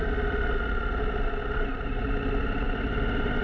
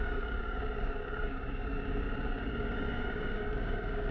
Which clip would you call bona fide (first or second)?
first